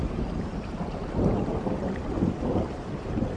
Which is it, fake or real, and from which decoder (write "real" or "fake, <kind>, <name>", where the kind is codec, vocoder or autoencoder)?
fake, vocoder, BigVGAN v2